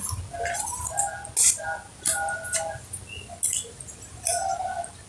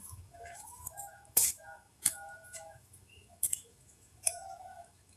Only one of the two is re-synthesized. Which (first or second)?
second